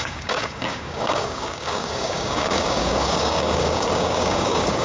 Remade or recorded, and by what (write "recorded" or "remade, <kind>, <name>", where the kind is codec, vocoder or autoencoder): remade, codec, DAC